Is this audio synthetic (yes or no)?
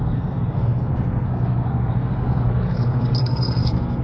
yes